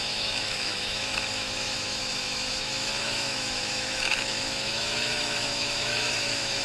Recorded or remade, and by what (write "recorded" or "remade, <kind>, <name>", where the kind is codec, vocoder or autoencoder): remade, autoencoder, DAC-VAE